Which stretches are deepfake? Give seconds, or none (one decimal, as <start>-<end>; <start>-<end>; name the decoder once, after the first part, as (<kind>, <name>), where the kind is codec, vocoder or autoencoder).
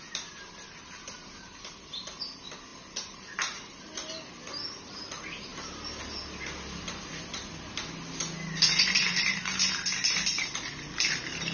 none